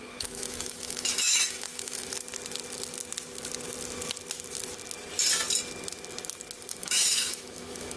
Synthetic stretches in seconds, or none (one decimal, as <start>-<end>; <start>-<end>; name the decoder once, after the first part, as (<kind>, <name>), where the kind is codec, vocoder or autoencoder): 0.0-2.1 (autoencoder, DAC-VAE); 6.7-8.0